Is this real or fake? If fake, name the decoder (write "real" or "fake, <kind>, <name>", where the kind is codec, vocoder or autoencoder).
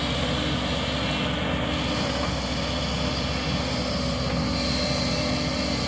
real